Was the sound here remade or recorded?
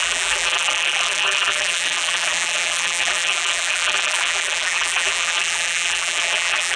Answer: remade